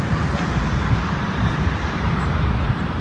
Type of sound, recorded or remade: remade